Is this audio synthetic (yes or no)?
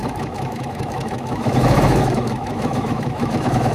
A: yes